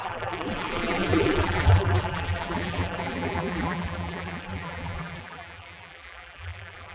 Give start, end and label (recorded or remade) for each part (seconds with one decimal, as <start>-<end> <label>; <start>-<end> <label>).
0.0-6.9 remade